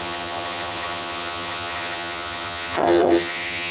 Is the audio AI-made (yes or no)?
yes